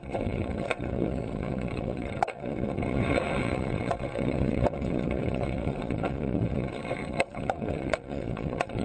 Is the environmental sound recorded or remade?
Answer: remade